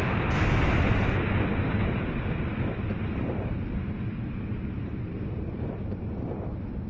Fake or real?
real